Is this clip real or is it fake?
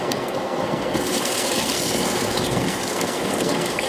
fake